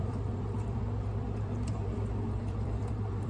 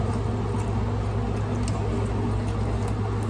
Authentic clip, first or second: second